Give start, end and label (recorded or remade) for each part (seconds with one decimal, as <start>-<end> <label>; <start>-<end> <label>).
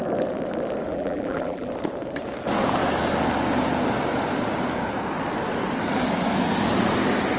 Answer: 0.0-0.9 recorded; 0.9-1.7 remade; 1.7-7.4 recorded